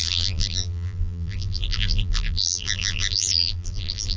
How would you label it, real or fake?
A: fake